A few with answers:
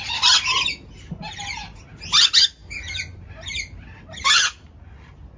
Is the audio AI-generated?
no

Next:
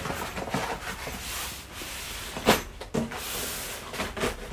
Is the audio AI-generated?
no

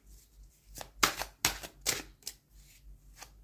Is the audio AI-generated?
no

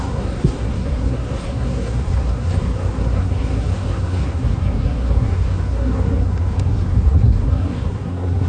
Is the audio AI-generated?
yes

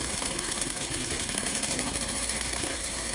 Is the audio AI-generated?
yes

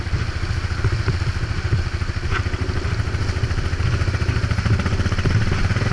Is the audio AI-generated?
no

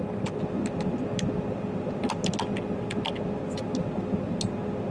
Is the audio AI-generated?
no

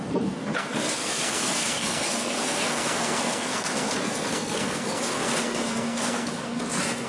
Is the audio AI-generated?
yes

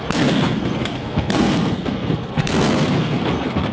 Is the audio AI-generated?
yes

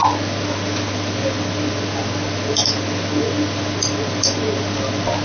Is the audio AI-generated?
no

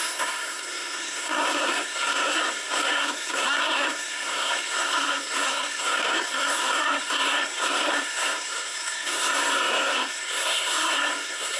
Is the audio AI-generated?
yes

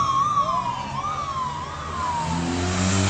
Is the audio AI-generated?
no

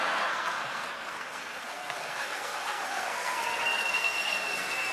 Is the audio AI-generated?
yes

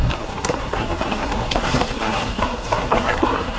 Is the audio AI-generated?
yes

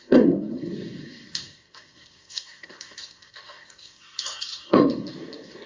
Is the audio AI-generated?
yes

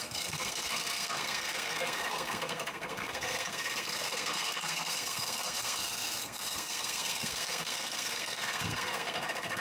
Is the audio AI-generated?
yes